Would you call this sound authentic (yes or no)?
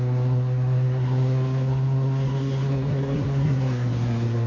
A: no